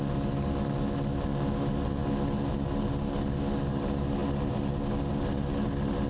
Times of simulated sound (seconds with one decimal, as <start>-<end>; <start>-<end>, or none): none